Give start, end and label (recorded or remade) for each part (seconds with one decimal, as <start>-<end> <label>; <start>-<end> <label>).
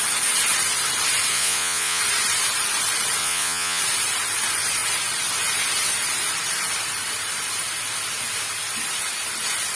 0.0-1.3 recorded; 1.3-2.0 remade; 2.0-3.2 recorded; 3.2-3.8 remade; 3.8-9.8 recorded